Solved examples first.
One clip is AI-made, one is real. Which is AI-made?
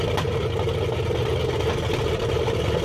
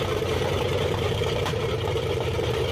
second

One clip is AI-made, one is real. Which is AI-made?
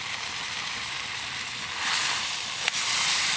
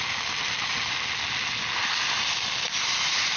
first